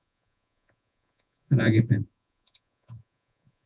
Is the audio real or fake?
fake